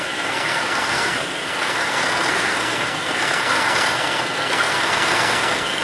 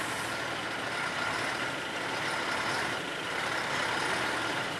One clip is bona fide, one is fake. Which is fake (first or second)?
first